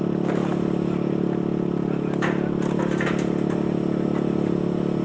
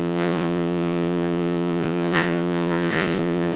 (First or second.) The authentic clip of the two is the first